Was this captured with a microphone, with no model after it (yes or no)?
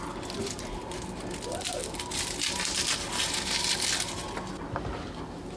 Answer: yes